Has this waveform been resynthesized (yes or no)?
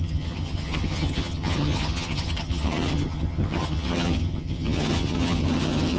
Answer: yes